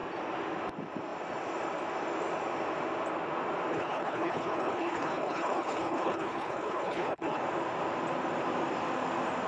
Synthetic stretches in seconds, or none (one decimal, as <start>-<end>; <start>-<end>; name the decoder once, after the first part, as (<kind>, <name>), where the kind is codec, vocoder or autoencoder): 3.7-7.4 (codec, HILCodec)